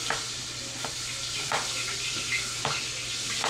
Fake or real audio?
real